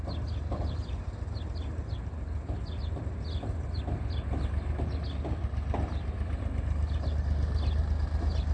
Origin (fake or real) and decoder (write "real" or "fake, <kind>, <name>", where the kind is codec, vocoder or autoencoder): real